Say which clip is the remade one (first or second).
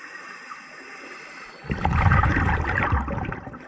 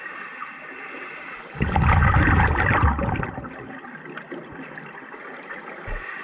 first